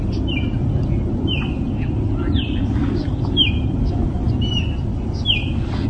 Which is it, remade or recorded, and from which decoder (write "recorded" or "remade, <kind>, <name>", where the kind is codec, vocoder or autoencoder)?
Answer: recorded